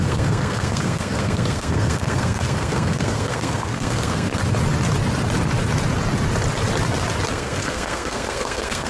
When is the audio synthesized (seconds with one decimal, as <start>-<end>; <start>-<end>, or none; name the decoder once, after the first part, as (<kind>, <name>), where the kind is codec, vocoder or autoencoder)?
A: 0.0-4.3 (codec, SNAC); 7.3-8.9